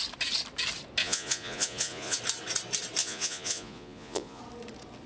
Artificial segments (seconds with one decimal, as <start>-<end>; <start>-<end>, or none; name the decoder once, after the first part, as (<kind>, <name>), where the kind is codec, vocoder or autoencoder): 1.0-2.2 (vocoder, Vocos); 3.0-4.4